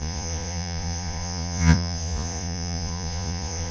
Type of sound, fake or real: fake